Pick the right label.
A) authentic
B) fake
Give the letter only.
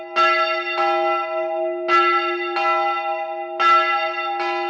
A